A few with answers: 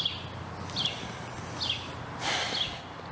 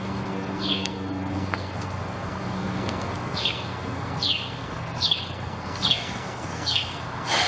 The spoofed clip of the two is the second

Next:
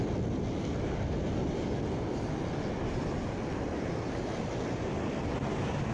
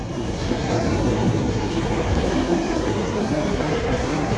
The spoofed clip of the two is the second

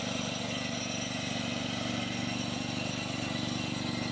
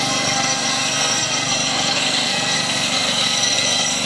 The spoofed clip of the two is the second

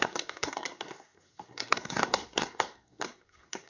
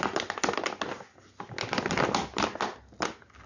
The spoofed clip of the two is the first